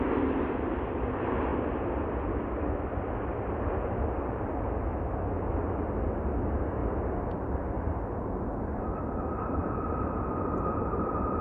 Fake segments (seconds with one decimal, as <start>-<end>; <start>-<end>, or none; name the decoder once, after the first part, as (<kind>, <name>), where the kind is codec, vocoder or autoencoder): 1.5-4.4 (vocoder, BigVGAN v2); 9.6-11.0